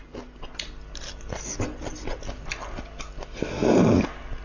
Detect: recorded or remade recorded